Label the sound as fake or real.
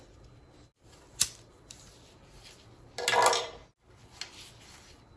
real